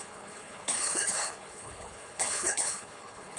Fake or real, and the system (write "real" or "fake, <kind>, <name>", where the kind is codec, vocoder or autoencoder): fake, codec, HILCodec